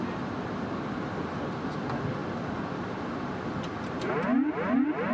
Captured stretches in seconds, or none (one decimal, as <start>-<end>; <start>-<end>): 0.0-5.1